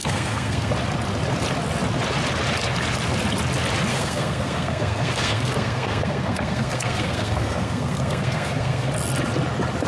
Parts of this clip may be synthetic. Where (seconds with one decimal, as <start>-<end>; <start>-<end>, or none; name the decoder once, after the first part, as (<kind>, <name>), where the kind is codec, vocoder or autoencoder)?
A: 0.0-0.7 (codec, SNAC); 3.9-8.9